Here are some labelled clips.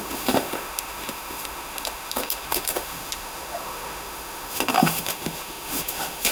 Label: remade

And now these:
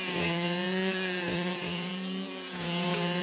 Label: remade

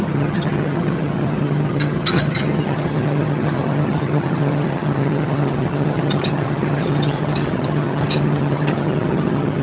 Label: remade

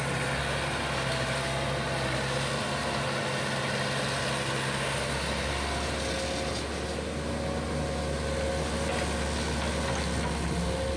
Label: recorded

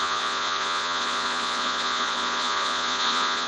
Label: remade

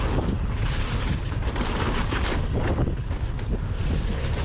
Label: recorded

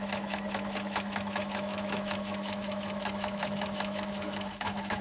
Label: remade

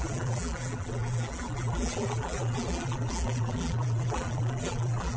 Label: remade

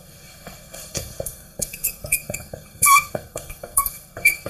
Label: remade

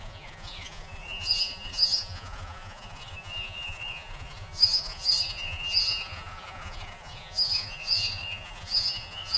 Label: remade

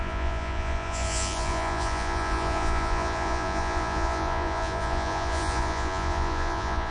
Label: remade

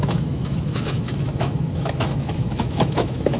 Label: remade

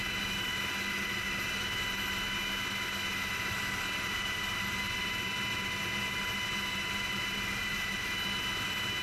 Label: recorded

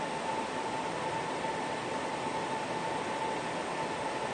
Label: recorded